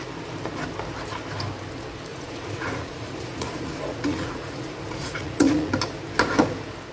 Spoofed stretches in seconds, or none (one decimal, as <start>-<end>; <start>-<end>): 2.1-5.7